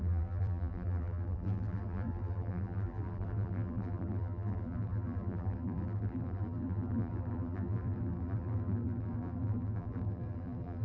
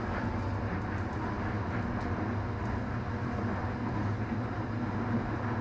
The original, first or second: second